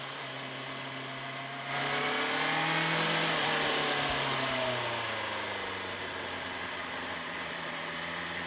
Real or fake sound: real